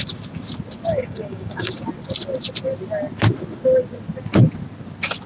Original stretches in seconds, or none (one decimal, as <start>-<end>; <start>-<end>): 0.0-0.9; 1.7-5.3